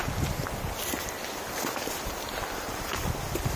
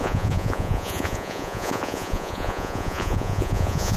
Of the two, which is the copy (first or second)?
second